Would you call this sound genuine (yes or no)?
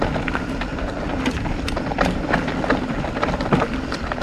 yes